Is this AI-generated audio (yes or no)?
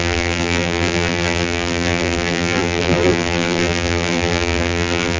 yes